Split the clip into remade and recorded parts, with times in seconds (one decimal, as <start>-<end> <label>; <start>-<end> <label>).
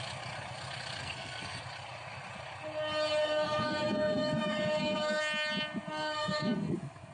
0.0-1.0 recorded; 1.0-1.6 remade; 1.6-3.2 recorded; 3.2-5.2 remade; 5.2-5.9 recorded; 5.9-7.1 remade